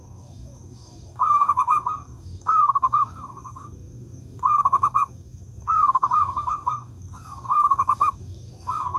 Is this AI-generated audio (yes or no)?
yes